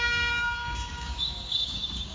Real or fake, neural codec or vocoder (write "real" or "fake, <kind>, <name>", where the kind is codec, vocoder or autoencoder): fake, codec, DAC